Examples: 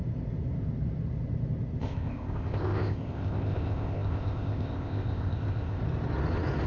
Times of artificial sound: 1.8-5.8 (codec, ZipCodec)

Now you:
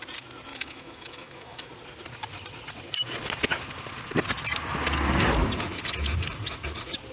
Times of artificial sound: 0.5-1.7 (autoencoder, DAC-VAE)

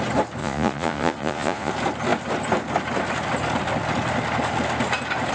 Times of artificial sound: 0.4-1.7 (vocoder, Vocos)